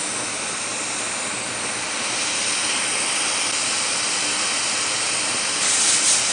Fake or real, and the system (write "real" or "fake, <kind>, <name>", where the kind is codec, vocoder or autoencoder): real